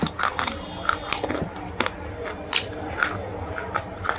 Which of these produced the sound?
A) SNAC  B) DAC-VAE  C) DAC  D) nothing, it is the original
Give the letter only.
D